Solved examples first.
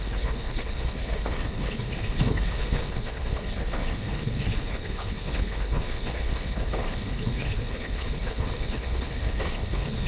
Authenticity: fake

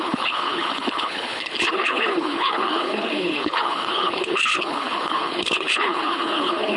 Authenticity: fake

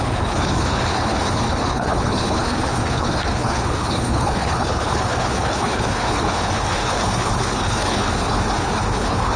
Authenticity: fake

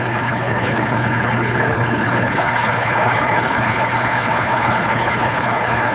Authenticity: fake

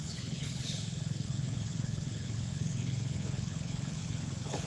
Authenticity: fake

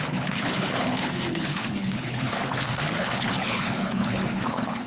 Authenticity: fake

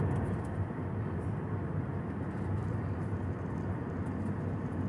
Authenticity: real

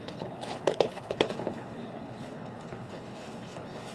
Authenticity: fake